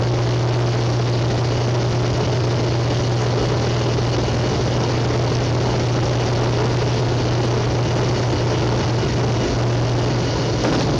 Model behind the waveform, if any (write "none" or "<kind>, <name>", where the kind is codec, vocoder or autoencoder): none